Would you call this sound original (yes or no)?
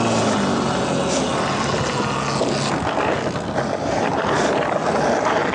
yes